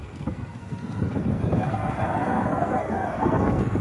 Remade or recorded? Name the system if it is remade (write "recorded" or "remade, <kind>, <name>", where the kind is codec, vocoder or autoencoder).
remade, codec, SNAC